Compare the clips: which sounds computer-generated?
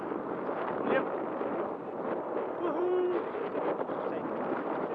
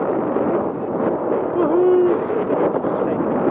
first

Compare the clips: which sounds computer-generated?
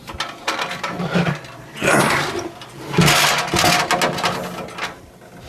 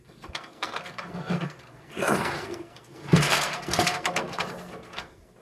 second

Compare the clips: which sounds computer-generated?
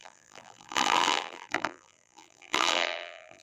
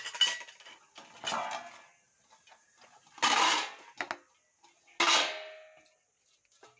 first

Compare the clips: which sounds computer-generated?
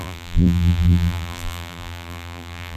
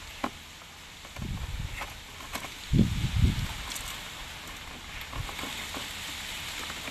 first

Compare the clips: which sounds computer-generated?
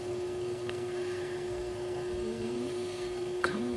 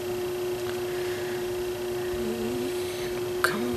first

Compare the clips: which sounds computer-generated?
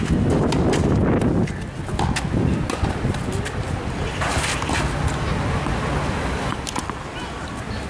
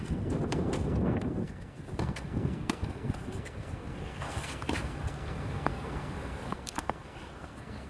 second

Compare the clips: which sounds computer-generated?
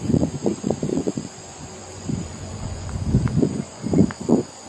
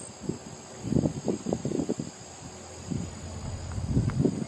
first